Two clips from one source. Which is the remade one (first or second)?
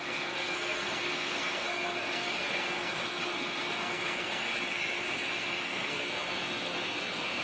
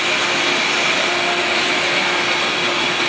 first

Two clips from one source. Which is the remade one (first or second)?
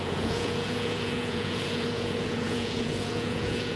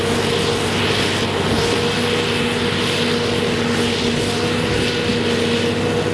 first